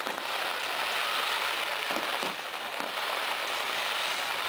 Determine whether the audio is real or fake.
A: real